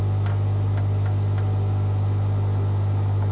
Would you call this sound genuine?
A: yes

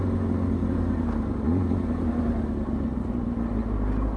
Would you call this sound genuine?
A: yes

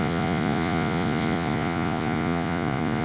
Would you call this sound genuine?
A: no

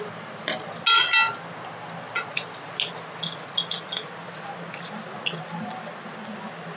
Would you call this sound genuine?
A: yes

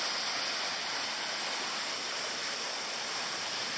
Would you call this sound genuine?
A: yes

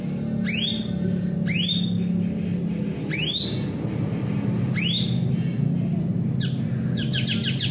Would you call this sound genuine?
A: yes